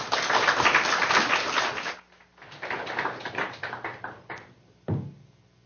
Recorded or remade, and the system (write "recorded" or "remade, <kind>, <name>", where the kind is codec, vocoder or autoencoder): recorded